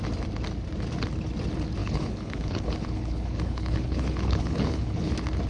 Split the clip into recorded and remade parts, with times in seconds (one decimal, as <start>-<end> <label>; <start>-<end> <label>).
0.0-1.8 recorded; 1.8-5.1 remade; 5.1-5.5 recorded